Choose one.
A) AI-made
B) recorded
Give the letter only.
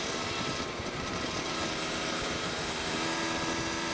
A